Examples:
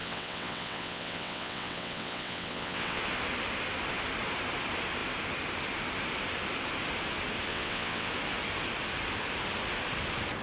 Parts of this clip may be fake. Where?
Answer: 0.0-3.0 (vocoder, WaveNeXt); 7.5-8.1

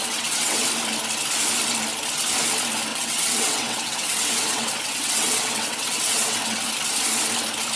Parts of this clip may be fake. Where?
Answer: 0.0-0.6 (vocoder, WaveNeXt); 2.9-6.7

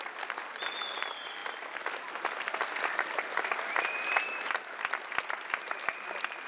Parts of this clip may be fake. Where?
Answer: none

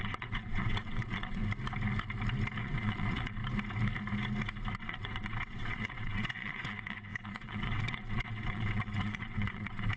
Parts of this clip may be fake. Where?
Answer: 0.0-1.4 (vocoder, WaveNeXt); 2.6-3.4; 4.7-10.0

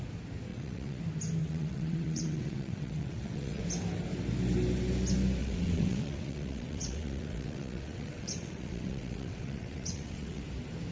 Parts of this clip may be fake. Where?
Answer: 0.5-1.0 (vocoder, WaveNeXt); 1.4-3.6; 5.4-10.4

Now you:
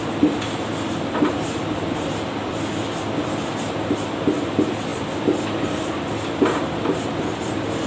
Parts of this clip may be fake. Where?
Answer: none

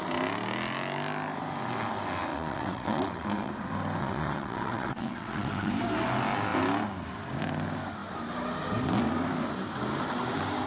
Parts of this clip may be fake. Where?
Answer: 2.3-3.5 (vocoder, WaveNeXt); 4.0-5.7

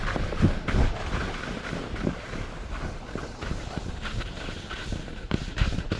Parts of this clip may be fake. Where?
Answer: none